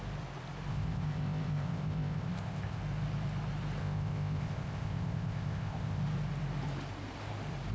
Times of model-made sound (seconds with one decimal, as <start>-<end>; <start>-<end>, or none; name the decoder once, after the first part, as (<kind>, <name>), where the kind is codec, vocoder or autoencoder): 0.7-2.8 (codec, ZipCodec); 3.8-6.0